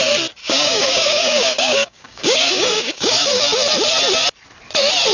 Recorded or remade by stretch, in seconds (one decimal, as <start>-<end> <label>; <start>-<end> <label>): 0.0-0.4 recorded; 0.4-3.4 remade; 3.4-5.1 recorded